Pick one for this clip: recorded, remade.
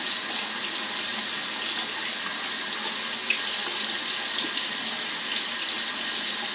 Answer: recorded